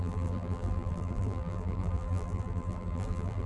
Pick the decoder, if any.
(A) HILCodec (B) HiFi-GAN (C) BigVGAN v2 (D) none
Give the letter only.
C